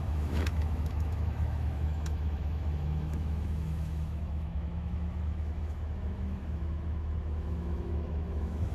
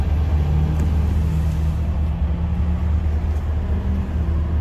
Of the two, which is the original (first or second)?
second